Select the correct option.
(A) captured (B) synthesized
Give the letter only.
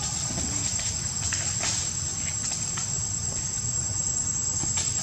A